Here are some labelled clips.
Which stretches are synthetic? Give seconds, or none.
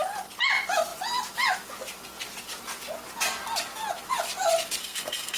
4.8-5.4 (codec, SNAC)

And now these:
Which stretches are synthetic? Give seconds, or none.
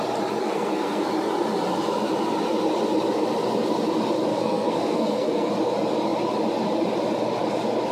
0.4-1.1 (codec, SNAC); 4.3-5.5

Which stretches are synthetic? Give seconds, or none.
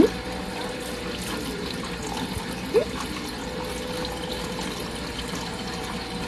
none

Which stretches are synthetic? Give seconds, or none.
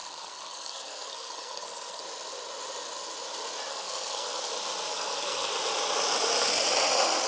0.0-2.0 (codec, SNAC); 3.7-4.5; 4.9-5.5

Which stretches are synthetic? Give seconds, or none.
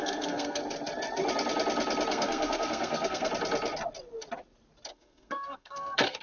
0.0-0.6 (codec, SNAC); 2.1-3.3; 4.9-6.2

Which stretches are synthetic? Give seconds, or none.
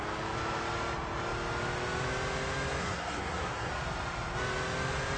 2.8-3.7 (codec, SNAC)